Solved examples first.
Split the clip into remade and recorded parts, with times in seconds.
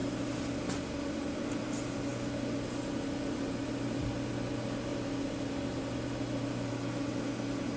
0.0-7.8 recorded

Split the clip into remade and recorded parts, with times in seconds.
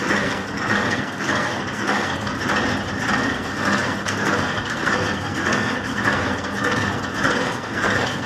0.0-2.3 remade; 2.3-3.1 recorded; 3.1-8.3 remade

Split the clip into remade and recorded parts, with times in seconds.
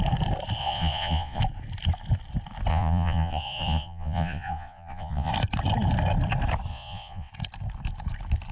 0.0-0.6 recorded; 0.6-1.4 remade; 1.4-2.7 recorded; 2.7-5.3 remade; 5.3-6.7 recorded; 6.7-7.3 remade; 7.3-8.5 recorded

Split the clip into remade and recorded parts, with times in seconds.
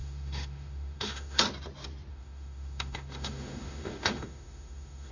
0.0-1.4 remade; 1.4-2.1 recorded; 2.1-5.1 remade